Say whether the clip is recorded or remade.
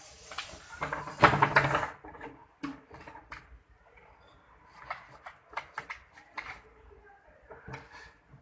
recorded